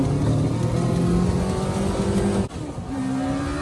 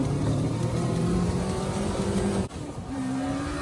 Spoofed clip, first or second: second